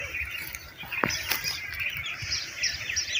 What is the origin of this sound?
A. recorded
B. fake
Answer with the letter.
A